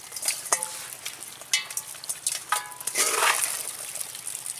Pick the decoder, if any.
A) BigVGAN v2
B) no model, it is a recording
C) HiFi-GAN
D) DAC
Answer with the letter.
B